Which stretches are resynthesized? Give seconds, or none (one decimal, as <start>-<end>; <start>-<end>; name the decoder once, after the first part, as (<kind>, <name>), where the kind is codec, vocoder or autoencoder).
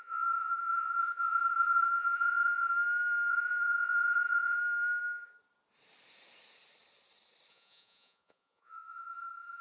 0.0-2.7 (vocoder, Vocos); 3.3-4.6; 7.5-9.6